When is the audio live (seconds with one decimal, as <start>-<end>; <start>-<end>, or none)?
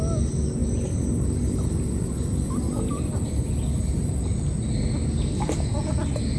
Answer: 0.0-6.4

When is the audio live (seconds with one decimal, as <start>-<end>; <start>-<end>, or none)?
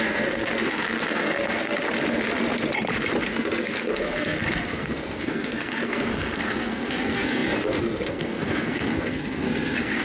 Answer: 1.8-3.2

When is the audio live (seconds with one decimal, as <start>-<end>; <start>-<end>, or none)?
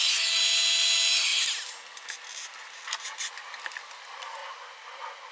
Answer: 0.0-5.3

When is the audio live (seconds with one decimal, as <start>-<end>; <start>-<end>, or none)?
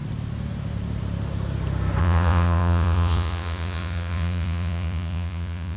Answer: 0.0-2.0